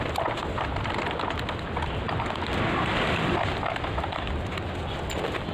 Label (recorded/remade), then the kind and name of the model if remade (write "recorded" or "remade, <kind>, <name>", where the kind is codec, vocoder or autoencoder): recorded